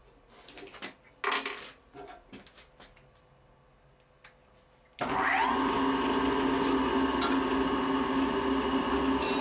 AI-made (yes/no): no